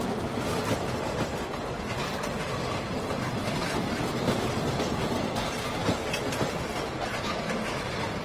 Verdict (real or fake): real